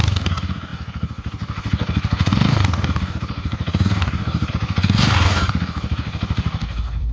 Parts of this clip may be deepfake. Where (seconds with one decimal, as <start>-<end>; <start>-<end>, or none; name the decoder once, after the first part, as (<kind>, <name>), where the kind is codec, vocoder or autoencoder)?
0.0-7.1 (codec, DAC)